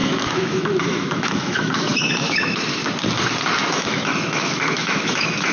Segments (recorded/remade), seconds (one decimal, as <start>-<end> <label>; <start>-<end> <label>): 0.0-2.8 remade; 2.8-3.7 recorded; 3.7-5.5 remade

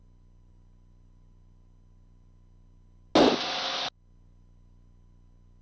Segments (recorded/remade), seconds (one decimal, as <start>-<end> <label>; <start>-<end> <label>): 0.0-5.6 recorded

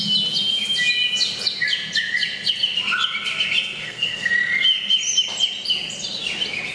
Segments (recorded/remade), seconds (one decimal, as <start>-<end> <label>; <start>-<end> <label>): 0.0-3.8 recorded; 3.8-4.3 remade; 4.3-6.7 recorded